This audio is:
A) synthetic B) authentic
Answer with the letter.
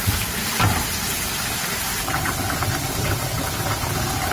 A